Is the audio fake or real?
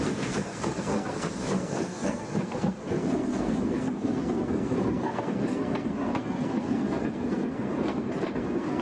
fake